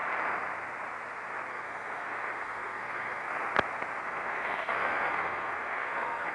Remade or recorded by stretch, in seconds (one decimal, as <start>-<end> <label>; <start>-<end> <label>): 0.0-1.5 recorded; 1.5-3.3 remade; 3.3-4.0 recorded; 4.0-6.3 remade

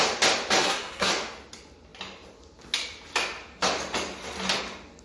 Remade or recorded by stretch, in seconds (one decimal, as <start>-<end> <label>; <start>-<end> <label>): 0.0-0.6 recorded; 0.6-1.1 remade; 1.1-5.0 recorded

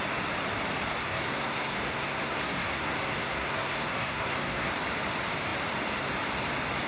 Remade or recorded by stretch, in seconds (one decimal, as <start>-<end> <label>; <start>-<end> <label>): 0.0-1.0 recorded; 1.0-4.7 remade; 4.7-6.9 recorded

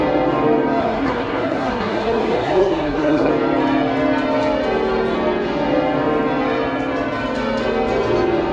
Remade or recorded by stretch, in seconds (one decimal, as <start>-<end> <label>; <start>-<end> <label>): 0.0-0.8 recorded; 0.8-3.3 remade; 3.3-8.5 recorded

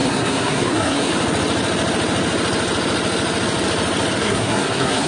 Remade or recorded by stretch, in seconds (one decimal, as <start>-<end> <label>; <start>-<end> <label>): 0.0-1.1 remade; 1.1-4.2 recorded; 4.2-5.1 remade